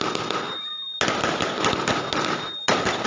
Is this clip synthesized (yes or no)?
no